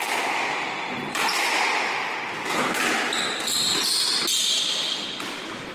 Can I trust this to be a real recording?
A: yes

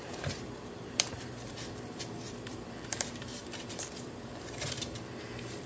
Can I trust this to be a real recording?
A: no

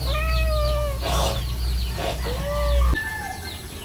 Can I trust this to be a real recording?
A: yes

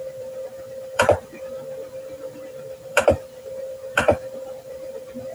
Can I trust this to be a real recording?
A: no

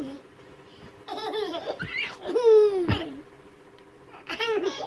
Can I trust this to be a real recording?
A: no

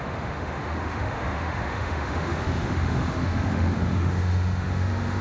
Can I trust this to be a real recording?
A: no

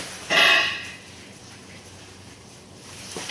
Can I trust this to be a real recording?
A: no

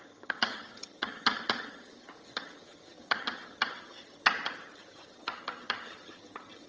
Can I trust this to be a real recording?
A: no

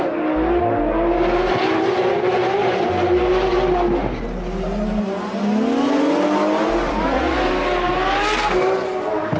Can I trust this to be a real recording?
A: yes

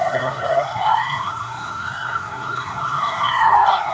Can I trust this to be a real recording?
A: no